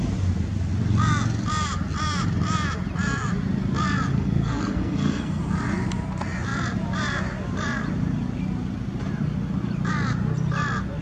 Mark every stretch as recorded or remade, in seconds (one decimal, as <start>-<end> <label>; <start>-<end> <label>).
0.0-4.1 recorded; 4.1-5.4 remade; 5.4-11.0 recorded

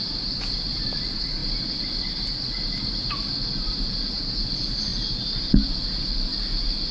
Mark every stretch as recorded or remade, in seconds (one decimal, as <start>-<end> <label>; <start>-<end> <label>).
0.0-6.9 recorded

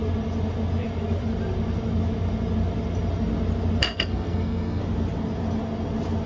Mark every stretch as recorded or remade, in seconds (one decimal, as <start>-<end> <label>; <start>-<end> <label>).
0.0-3.8 recorded; 3.8-4.8 remade; 4.8-6.3 recorded

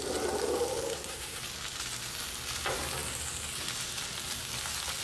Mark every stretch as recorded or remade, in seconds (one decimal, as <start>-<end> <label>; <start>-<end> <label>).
0.0-0.9 recorded; 0.9-1.4 remade; 1.4-5.0 recorded